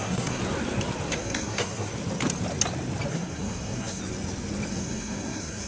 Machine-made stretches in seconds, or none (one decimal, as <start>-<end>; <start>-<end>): 0.0-0.4; 1.1-1.9; 3.1-4.0; 4.7-5.7